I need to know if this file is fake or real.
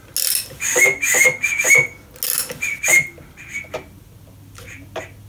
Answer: real